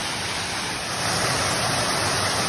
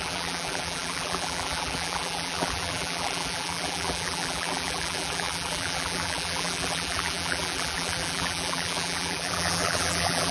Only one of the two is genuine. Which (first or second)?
first